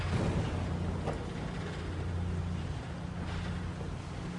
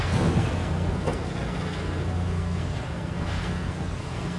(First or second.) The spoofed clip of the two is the second